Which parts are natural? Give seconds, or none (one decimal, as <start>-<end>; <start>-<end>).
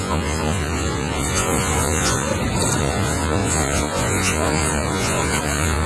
2.3-2.8